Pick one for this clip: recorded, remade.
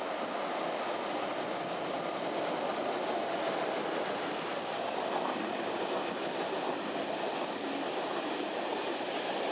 recorded